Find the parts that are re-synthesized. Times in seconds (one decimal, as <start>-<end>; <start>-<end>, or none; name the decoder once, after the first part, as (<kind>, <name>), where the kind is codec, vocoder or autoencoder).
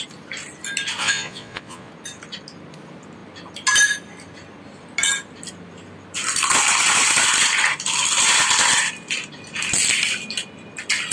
1.0-1.9 (vocoder, Vocos)